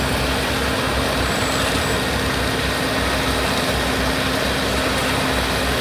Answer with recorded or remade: recorded